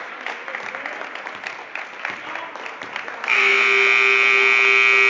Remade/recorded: recorded